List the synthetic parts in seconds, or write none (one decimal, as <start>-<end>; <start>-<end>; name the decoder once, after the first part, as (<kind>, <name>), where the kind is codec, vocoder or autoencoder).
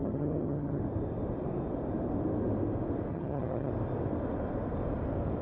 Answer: 0.0-0.8 (vocoder, HiFi-GAN); 3.1-3.7